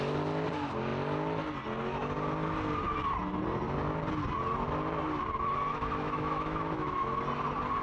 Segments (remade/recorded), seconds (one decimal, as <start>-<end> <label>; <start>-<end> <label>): 0.0-5.7 recorded; 5.7-7.2 remade; 7.2-7.8 recorded